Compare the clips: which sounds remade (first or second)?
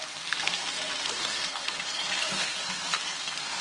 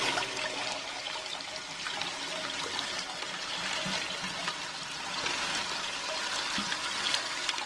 first